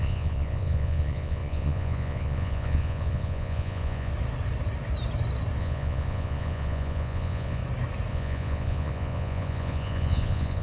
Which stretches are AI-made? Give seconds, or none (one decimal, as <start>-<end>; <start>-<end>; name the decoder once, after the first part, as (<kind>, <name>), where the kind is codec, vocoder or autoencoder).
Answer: 0.0-4.1 (vocoder, Vocos); 5.6-7.6; 8.1-10.6